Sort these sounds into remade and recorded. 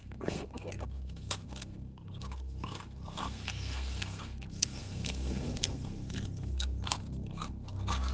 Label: remade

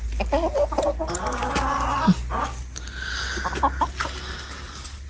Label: recorded